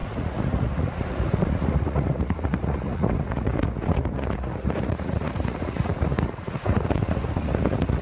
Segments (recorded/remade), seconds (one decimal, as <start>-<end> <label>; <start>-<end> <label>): 0.0-8.0 remade

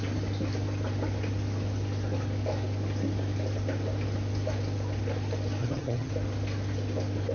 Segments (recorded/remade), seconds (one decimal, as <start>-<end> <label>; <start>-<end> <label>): 0.0-5.6 recorded; 5.6-6.1 remade; 6.1-7.3 recorded